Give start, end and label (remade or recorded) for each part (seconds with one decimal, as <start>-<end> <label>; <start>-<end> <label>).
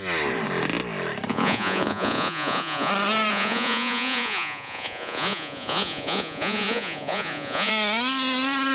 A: 0.0-1.3 recorded; 1.3-2.9 remade; 2.9-3.3 recorded; 3.3-7.7 remade; 7.7-8.7 recorded